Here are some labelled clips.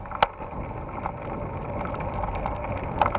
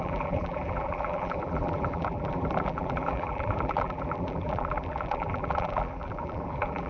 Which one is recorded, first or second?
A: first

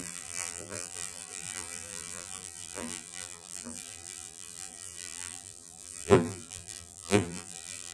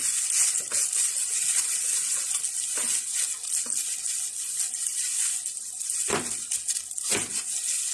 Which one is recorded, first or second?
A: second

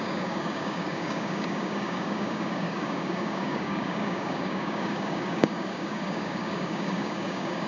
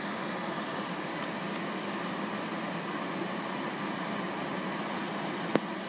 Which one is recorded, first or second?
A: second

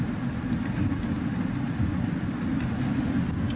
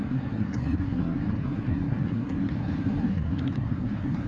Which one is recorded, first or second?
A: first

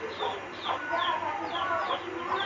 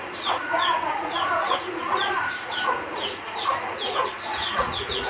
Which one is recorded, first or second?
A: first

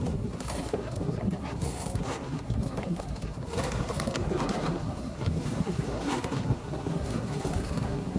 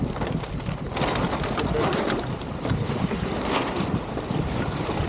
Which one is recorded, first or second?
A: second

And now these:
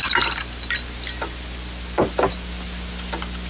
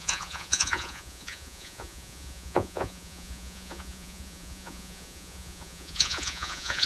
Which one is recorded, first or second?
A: first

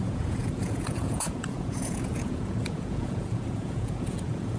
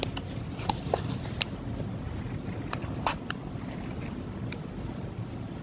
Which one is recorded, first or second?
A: second